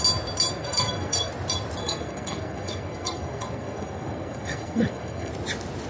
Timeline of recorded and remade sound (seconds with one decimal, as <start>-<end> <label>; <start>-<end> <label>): 0.0-0.5 recorded; 0.5-1.3 remade; 1.3-1.8 recorded; 1.8-5.3 remade; 5.3-5.9 recorded